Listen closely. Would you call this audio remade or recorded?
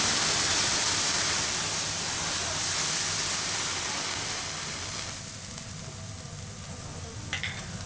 recorded